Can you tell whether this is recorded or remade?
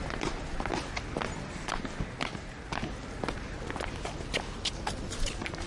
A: recorded